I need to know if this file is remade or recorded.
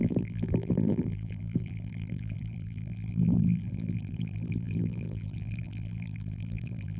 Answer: remade